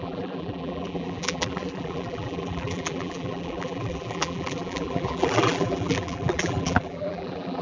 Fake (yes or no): yes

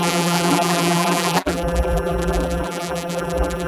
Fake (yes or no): yes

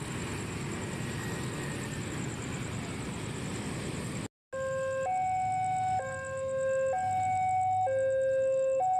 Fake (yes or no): no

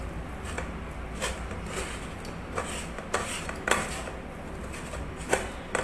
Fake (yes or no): no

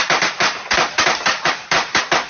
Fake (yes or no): yes